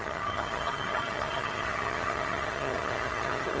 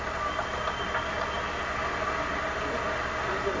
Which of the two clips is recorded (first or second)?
second